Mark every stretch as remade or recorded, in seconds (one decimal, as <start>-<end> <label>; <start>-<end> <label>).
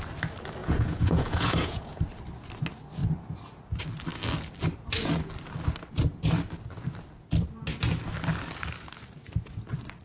0.0-0.6 recorded; 0.6-2.0 remade; 2.0-10.0 recorded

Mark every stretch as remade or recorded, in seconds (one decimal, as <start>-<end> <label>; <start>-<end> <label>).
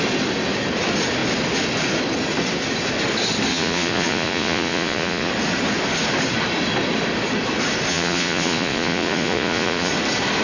0.0-3.5 recorded; 3.5-5.3 remade; 5.3-7.9 recorded; 7.9-9.9 remade; 9.9-10.4 recorded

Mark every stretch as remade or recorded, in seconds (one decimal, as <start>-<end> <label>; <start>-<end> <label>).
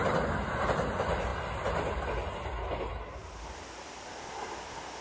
0.0-5.0 recorded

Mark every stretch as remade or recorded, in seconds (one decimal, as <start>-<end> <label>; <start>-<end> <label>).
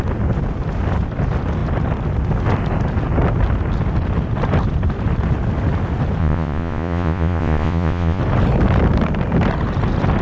0.0-6.2 recorded; 6.2-8.2 remade; 8.2-10.2 recorded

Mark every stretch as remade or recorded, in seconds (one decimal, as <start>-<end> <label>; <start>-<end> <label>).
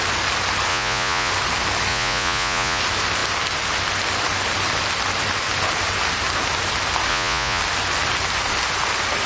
0.0-0.7 recorded; 0.7-1.3 remade; 1.3-1.9 recorded; 1.9-2.8 remade; 2.8-7.1 recorded; 7.1-7.6 remade; 7.6-9.3 recorded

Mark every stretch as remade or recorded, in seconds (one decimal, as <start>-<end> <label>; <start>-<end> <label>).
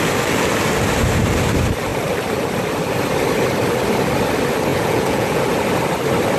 0.0-4.7 recorded; 4.7-5.4 remade; 5.4-6.4 recorded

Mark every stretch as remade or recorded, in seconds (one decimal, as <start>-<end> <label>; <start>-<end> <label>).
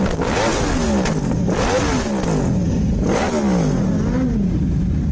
0.0-5.1 recorded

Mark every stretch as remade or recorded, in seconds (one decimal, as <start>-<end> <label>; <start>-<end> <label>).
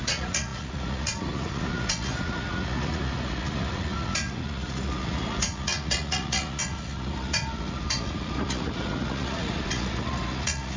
0.0-10.8 remade